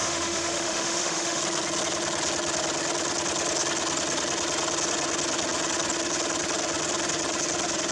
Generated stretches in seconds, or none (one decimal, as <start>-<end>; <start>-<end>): 0.0-1.4

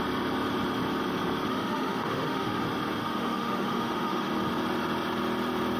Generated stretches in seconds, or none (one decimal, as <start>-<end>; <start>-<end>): 1.5-2.6; 3.0-4.3

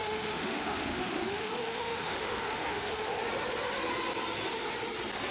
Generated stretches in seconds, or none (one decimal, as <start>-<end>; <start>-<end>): 0.0-3.2